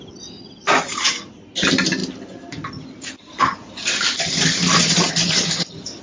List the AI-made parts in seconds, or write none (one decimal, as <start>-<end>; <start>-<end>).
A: none

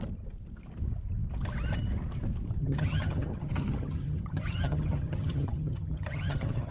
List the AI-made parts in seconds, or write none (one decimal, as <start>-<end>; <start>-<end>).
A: 2.6-6.7

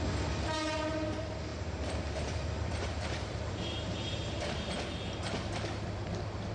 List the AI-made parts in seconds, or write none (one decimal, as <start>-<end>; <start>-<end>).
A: 1.5-4.7

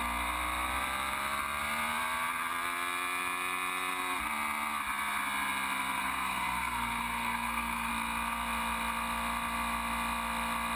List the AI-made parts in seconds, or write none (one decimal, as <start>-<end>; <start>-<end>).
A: 6.0-7.9